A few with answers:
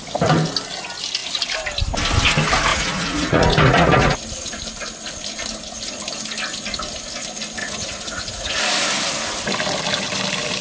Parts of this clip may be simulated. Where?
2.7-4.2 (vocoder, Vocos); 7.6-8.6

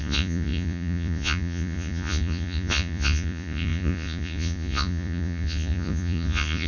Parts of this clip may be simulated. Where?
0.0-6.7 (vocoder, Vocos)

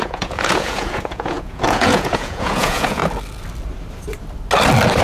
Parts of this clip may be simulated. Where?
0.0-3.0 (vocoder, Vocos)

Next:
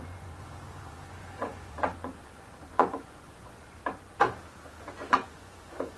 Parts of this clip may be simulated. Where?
0.0-3.8 (vocoder, Vocos); 4.8-6.0

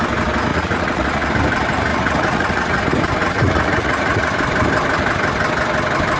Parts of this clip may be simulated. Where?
0.5-1.3 (vocoder, Vocos); 1.9-2.8; 3.2-4.3